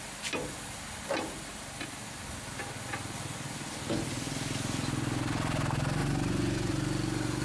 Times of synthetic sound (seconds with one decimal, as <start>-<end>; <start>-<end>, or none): 6.0-6.7